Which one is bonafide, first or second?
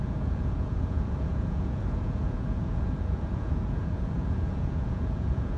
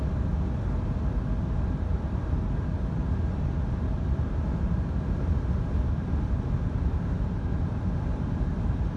second